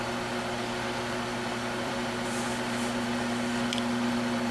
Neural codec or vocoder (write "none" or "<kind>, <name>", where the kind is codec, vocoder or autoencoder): vocoder, BigVGAN v2